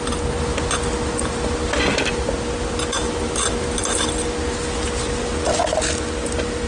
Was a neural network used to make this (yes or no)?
no